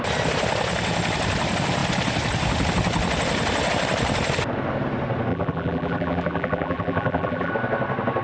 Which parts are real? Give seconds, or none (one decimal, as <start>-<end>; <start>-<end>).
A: 0.0-5.3; 7.5-8.2